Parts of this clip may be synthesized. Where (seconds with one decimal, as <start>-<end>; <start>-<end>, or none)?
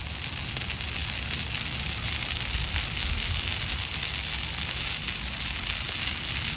none